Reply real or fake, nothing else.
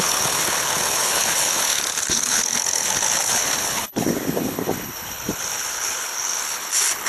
fake